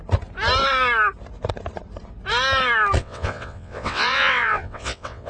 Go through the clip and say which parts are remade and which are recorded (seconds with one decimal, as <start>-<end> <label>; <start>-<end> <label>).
0.0-3.0 recorded; 3.0-5.3 remade